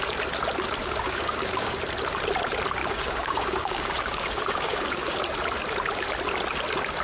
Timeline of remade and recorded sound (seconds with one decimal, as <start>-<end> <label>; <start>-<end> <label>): 0.0-0.8 recorded; 0.8-1.8 remade; 1.8-2.8 recorded; 2.8-5.2 remade; 5.2-7.0 recorded